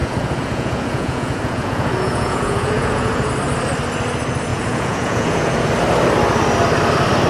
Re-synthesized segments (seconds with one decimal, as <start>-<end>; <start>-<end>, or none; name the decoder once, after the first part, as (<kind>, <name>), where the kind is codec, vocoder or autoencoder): 0.0-3.3 (vocoder, Vocos); 4.5-5.7